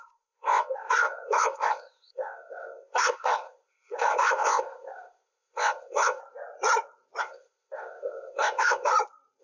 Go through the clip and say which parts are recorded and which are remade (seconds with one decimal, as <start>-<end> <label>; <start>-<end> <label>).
0.0-6.2 remade; 6.2-7.2 recorded; 7.2-8.9 remade; 8.9-9.4 recorded